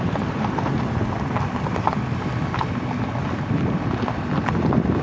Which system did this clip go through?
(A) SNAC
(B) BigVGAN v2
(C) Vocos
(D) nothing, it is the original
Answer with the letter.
B